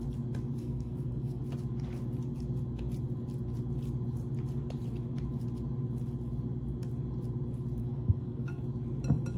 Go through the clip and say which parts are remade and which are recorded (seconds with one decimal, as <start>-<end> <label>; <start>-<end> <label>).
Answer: 0.0-0.6 recorded; 0.6-1.4 remade; 1.4-7.8 recorded; 7.8-8.6 remade; 8.6-9.4 recorded

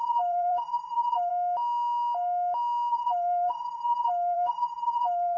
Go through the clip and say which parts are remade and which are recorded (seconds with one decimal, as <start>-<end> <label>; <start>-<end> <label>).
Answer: 0.0-1.3 remade; 1.3-2.9 recorded; 2.9-5.4 remade

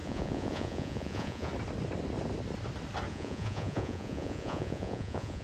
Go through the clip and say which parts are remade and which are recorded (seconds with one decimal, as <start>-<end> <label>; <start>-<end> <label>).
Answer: 0.0-1.5 remade; 1.5-3.1 recorded; 3.1-5.4 remade

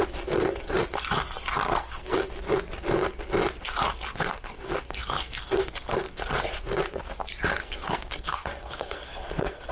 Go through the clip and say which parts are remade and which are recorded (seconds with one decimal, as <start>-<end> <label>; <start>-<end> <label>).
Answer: 0.0-1.7 recorded; 1.7-2.3 remade; 2.3-4.1 recorded; 4.1-6.2 remade; 6.2-7.6 recorded; 7.6-9.7 remade

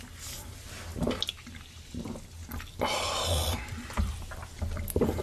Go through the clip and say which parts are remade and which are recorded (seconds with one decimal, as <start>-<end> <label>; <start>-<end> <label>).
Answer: 0.0-5.2 recorded

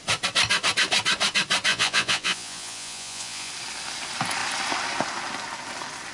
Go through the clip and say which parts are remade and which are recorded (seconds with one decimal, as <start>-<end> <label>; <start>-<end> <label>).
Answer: 0.0-1.7 recorded; 1.7-3.5 remade; 3.5-6.1 recorded

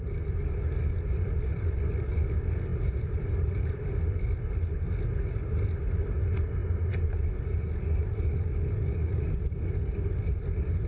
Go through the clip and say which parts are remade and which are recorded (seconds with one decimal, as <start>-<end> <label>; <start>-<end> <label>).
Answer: 0.0-2.7 recorded; 2.7-3.9 remade; 3.9-10.9 recorded

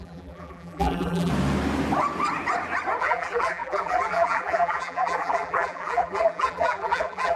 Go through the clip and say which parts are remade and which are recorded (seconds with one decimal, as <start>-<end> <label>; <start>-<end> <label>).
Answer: 0.0-1.3 remade; 1.3-3.0 recorded; 3.0-7.4 remade